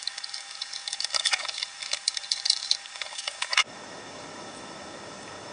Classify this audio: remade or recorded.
remade